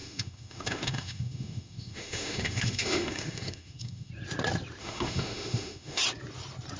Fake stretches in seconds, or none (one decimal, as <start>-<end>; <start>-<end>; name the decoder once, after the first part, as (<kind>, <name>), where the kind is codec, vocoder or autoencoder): 0.0-4.1 (autoencoder, DAC-VAE); 4.8-6.0